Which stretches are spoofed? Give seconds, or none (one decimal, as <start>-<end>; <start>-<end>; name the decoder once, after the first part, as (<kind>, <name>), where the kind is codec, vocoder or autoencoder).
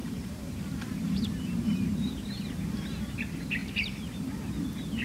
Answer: 0.0-3.0 (vocoder, BigVGAN v2); 3.6-4.5